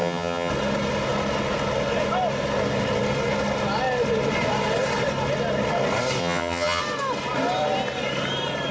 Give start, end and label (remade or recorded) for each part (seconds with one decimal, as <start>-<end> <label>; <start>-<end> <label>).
0.0-0.5 remade; 0.5-6.2 recorded; 6.2-6.8 remade; 6.8-8.7 recorded